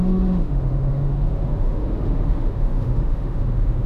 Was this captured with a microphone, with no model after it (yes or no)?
no